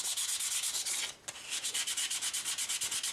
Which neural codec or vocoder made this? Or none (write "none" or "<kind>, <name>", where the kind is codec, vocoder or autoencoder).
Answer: none